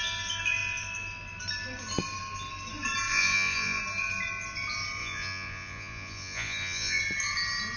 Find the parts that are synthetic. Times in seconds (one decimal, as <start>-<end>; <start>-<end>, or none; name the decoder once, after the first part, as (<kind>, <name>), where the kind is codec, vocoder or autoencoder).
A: 3.1-3.8 (vocoder, Vocos); 5.0-7.0